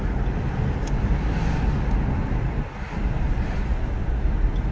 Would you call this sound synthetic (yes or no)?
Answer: no